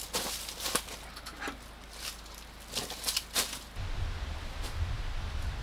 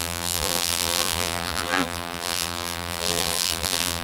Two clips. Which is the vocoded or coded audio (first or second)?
second